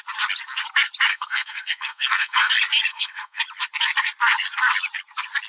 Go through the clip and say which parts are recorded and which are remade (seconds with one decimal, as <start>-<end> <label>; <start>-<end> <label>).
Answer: 0.0-1.1 recorded; 1.1-2.5 remade; 2.5-2.9 recorded; 2.9-3.4 remade; 3.4-5.5 recorded